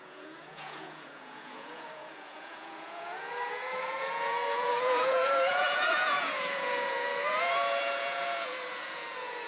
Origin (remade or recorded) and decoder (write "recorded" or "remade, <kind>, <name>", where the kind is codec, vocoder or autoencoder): remade, vocoder, Vocos